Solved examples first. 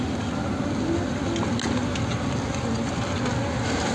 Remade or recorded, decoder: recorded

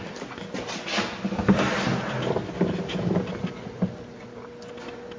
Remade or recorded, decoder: recorded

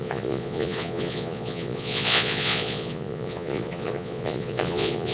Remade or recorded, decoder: remade, vocoder, Vocos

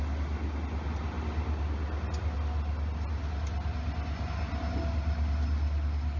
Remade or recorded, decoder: recorded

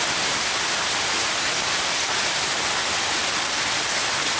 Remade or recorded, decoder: recorded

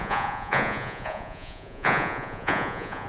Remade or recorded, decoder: remade, vocoder, Vocos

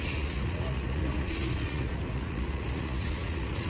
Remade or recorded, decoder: remade, vocoder, Vocos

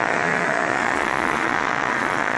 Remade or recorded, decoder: remade, vocoder, Vocos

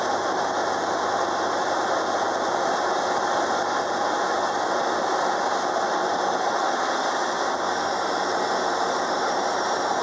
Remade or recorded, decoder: recorded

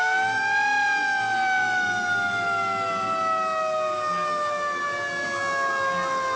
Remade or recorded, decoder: recorded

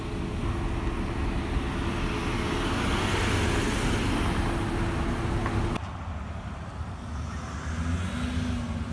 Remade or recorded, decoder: recorded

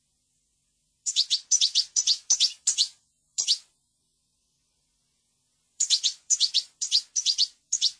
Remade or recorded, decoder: remade, vocoder, Vocos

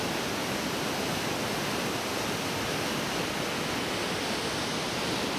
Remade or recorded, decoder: recorded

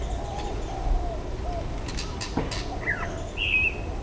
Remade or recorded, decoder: recorded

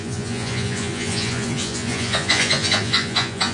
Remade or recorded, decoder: remade, vocoder, Vocos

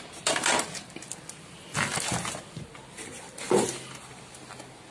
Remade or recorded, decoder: recorded